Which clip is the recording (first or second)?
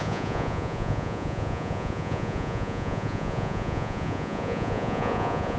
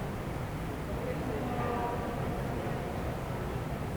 second